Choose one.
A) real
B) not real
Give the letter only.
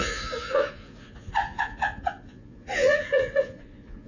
B